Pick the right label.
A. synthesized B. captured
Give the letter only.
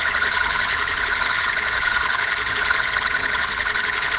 A